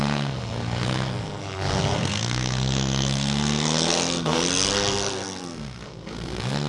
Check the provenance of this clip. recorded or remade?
remade